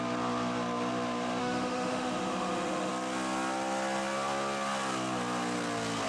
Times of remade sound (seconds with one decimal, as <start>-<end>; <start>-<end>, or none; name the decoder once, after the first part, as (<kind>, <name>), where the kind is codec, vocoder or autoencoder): 1.4-2.9 (autoencoder, DAC-VAE)